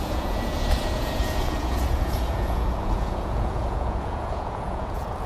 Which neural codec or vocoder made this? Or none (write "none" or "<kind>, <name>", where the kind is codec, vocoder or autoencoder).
vocoder, Vocos